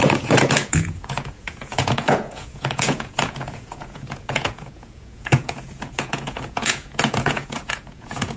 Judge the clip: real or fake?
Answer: fake